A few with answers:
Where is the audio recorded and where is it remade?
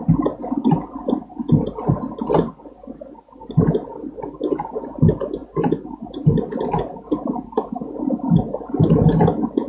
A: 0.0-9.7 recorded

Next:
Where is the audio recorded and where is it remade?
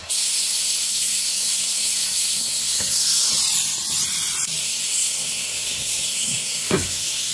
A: 0.0-3.3 remade; 3.3-4.6 recorded; 4.6-7.3 remade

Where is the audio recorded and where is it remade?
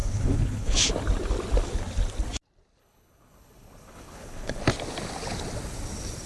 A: 0.0-0.9 remade; 0.9-2.8 recorded; 2.8-4.6 remade; 4.6-6.3 recorded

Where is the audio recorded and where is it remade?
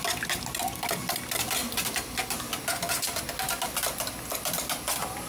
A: 0.0-5.3 recorded